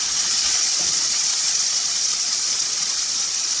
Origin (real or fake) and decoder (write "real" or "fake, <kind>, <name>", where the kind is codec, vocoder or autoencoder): fake, vocoder, Vocos